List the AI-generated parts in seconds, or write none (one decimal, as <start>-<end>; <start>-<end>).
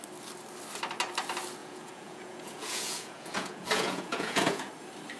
1.6-4.7